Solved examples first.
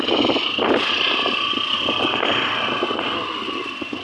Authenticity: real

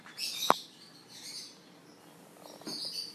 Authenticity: real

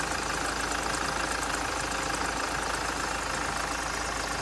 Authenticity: real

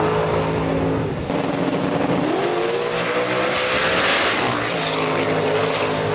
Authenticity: real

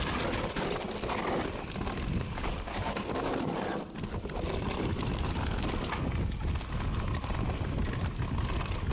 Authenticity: real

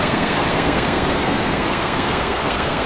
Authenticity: fake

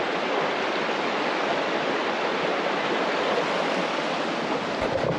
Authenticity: real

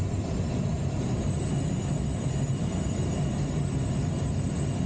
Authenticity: real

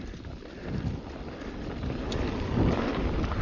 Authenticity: fake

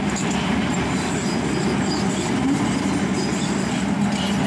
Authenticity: real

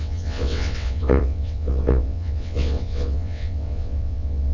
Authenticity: fake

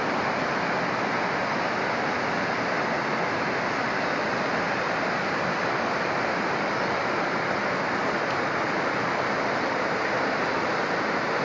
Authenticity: real